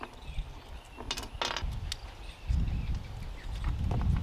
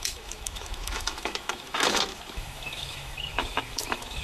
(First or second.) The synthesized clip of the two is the second